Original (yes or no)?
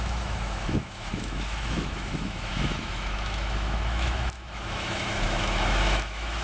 no